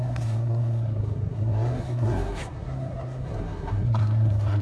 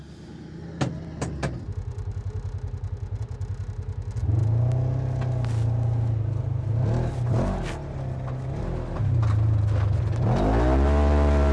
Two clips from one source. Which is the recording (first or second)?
second